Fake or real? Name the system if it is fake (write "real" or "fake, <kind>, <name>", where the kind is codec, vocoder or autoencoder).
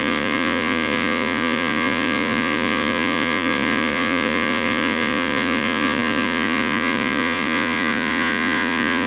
fake, vocoder, Vocos